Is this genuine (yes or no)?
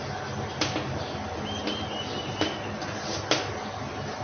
yes